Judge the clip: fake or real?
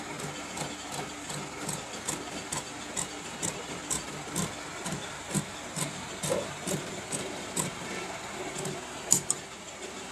real